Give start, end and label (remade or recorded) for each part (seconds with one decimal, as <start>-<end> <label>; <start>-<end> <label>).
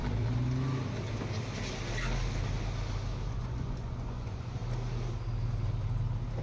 0.0-3.3 recorded; 3.3-4.6 remade; 4.6-6.4 recorded